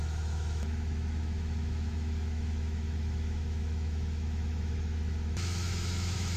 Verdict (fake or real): fake